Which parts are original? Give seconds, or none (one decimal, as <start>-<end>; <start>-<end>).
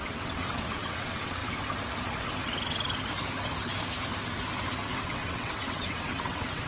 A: 1.4-4.9